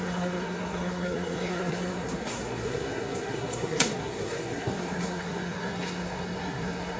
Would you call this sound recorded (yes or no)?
no